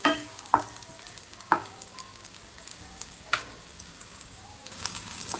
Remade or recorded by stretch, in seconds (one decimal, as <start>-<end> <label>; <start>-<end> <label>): 0.0-0.5 remade; 0.5-1.1 recorded; 1.1-5.4 remade